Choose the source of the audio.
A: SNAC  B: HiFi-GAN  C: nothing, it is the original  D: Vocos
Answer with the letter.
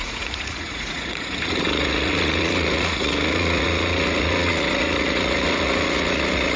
D